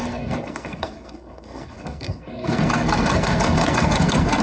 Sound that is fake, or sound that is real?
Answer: fake